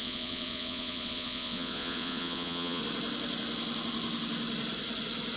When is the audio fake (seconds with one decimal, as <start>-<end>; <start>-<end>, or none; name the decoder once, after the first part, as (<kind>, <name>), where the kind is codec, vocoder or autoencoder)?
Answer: 0.0-2.8 (vocoder, Vocos)